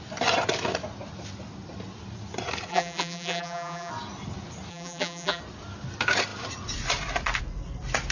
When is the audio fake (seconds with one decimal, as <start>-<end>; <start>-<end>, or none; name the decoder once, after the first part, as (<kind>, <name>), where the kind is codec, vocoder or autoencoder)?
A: 2.7-3.9 (vocoder, BigVGAN v2); 4.7-5.4